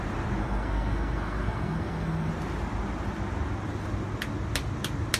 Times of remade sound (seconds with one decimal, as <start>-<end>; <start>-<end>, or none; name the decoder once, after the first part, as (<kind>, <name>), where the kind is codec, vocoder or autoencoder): 0.4-2.3 (codec, SNAC)